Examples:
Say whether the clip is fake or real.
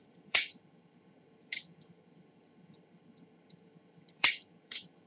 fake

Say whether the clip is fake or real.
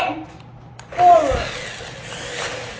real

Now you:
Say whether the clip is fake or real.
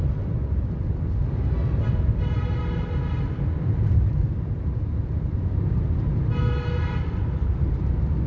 real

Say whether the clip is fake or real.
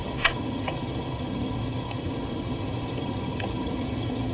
fake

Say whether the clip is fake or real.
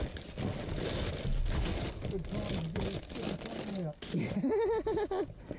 real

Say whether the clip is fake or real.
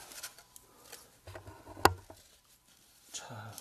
real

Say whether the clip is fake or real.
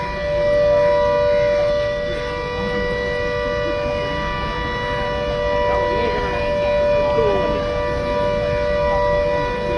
real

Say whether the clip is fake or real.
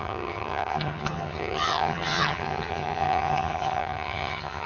fake